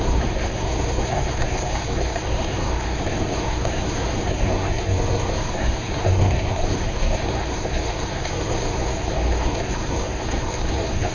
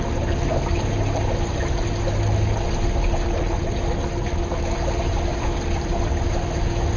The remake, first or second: first